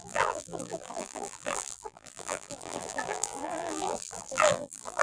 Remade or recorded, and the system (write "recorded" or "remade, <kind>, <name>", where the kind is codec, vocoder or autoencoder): remade, vocoder, BigVGAN v2